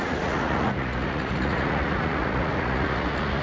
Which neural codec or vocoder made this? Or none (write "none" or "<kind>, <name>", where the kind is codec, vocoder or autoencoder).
vocoder, Vocos